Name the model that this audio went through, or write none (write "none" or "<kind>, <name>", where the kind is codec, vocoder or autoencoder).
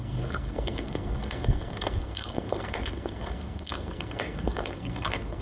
codec, SNAC